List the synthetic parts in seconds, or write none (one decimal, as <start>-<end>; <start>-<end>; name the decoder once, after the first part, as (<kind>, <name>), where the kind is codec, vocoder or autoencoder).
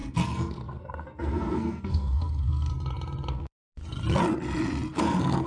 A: 0.0-2.7 (codec, SNAC); 3.3-3.8; 5.0-5.5